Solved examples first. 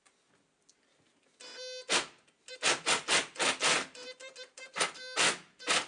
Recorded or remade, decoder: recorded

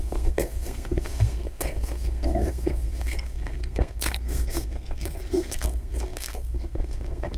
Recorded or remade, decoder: remade, codec, SNAC